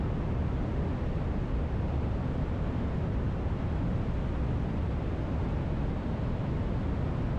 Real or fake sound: fake